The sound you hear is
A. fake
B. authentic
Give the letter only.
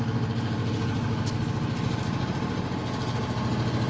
B